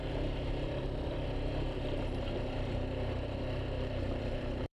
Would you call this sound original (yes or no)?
no